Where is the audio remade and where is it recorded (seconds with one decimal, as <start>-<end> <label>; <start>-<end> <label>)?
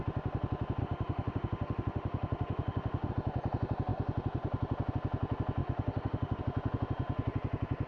0.0-0.8 recorded; 0.8-3.1 remade; 3.1-5.6 recorded; 5.6-6.4 remade; 6.4-7.9 recorded